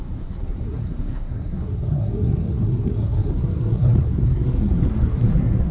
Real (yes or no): no